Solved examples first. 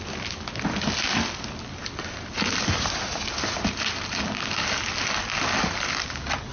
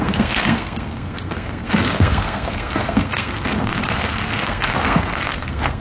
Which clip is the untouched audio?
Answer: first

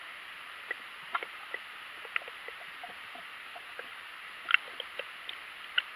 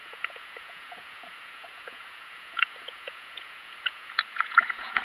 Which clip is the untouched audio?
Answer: first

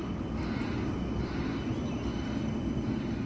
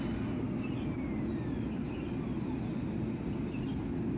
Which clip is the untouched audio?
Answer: second